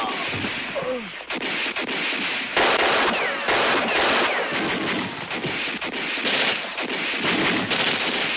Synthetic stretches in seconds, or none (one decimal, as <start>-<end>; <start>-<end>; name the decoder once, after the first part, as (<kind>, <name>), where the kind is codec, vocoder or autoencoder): none